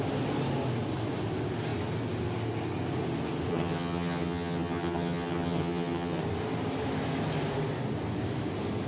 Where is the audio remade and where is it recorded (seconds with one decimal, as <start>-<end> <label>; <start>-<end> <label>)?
0.0-3.5 recorded; 3.5-6.2 remade; 6.2-8.9 recorded